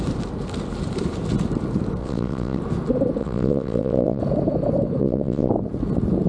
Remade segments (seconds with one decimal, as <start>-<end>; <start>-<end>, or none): 2.0-2.6; 3.2-4.2; 5.0-5.5